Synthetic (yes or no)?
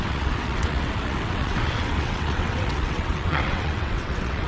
yes